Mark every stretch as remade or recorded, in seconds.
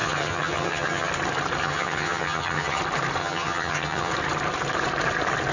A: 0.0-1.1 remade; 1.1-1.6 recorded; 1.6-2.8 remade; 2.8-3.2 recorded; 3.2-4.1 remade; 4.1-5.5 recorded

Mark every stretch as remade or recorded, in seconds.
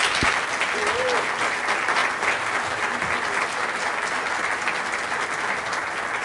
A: 0.0-6.2 recorded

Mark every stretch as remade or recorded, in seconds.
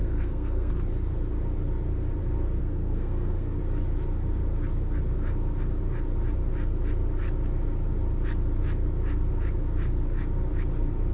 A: 0.0-0.7 remade; 0.7-2.6 recorded; 2.6-3.6 remade; 3.6-11.1 recorded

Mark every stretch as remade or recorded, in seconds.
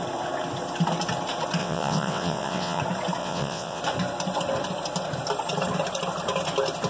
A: 0.0-1.6 recorded; 1.6-2.8 remade; 2.8-3.2 recorded; 3.2-3.8 remade; 3.8-6.9 recorded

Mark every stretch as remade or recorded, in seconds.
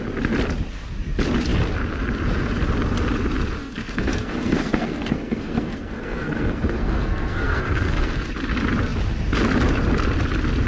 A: 0.0-3.6 recorded; 3.6-8.3 remade; 8.3-10.7 recorded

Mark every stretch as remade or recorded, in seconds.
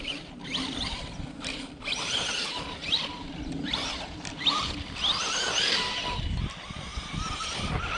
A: 0.0-8.0 remade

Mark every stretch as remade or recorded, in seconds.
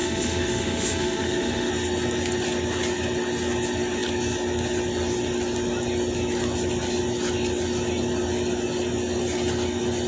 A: 0.0-1.7 remade; 1.7-10.1 recorded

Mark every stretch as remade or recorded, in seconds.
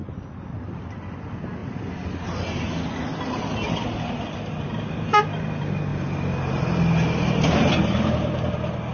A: 0.0-8.9 recorded